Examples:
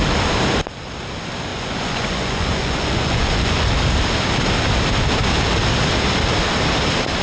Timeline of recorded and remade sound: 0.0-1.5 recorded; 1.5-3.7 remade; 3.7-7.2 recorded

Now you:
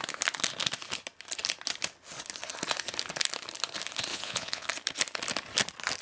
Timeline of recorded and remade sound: 0.0-4.1 recorded; 4.1-4.7 remade; 4.7-6.0 recorded